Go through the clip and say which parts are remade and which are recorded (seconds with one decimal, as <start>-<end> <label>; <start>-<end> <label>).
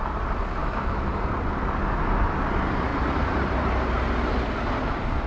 0.0-0.6 recorded; 0.6-1.2 remade; 1.2-5.3 recorded